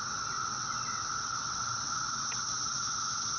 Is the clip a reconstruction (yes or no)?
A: yes